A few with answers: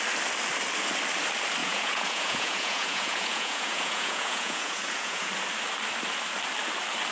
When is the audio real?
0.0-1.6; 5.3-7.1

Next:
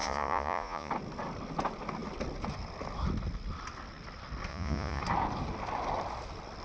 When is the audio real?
0.9-4.5; 5.0-6.6

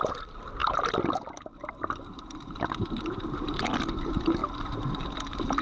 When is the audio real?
0.0-5.6

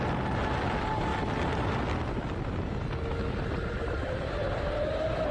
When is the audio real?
0.0-5.3

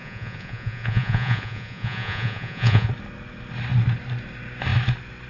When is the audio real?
2.9-5.3

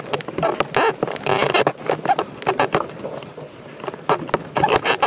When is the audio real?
0.0-5.1